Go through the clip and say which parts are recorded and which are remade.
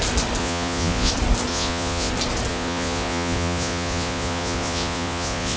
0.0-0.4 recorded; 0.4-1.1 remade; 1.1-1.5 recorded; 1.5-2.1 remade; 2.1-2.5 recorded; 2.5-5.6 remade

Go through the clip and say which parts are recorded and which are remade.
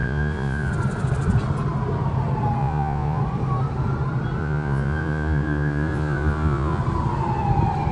0.0-0.7 remade; 0.7-2.6 recorded; 2.6-3.2 remade; 3.2-4.4 recorded; 4.4-6.8 remade; 6.8-7.9 recorded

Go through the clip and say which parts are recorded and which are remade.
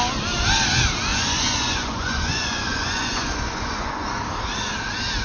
0.0-1.1 recorded; 1.1-4.2 remade; 4.2-5.2 recorded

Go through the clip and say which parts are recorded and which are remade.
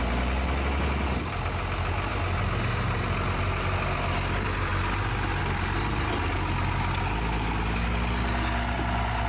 0.0-9.3 recorded